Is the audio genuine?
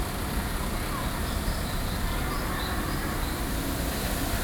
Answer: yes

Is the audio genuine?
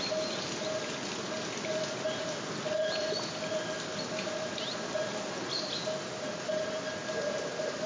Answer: yes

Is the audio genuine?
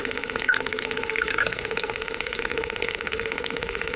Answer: no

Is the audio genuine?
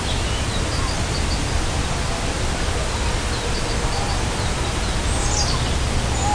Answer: yes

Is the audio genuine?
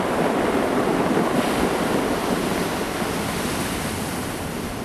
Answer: yes